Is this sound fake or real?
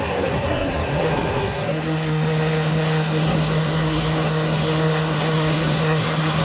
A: fake